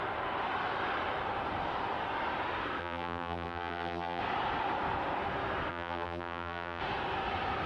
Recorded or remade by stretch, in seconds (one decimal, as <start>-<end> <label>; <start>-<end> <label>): 0.0-2.8 recorded; 2.8-4.2 remade; 4.2-5.7 recorded; 5.7-6.8 remade; 6.8-7.7 recorded